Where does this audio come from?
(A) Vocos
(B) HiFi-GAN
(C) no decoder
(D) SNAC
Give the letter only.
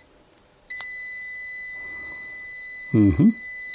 C